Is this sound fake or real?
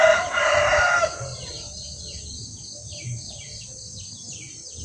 real